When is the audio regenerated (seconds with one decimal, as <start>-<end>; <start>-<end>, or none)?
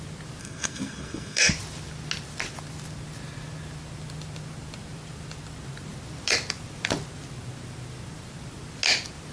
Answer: 0.4-1.5